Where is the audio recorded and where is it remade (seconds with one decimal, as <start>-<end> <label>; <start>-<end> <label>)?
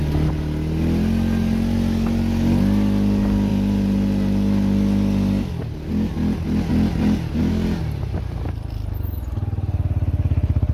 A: 0.0-10.7 recorded